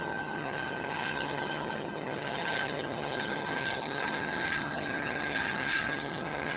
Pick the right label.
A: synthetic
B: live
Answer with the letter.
A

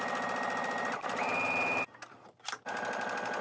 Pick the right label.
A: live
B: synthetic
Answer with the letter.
A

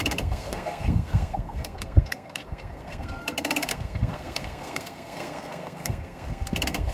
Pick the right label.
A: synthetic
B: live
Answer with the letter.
A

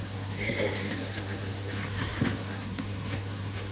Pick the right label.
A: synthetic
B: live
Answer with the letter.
A